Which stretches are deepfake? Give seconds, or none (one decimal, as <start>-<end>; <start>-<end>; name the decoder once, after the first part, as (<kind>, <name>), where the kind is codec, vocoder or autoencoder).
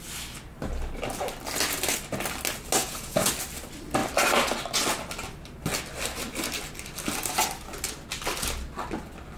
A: 2.8-3.3 (vocoder, Vocos)